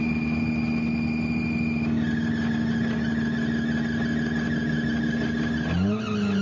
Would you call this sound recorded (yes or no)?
yes